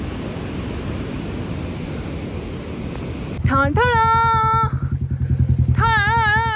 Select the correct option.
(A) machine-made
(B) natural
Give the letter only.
B